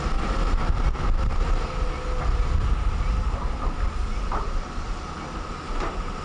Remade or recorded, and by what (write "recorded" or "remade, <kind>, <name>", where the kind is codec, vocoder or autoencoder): recorded